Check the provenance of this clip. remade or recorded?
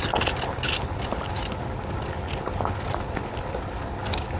recorded